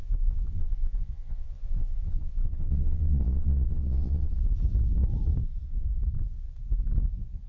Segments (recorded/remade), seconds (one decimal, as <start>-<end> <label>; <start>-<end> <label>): 0.0-4.3 remade; 4.3-7.5 recorded